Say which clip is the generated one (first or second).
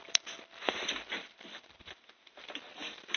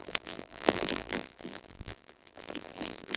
second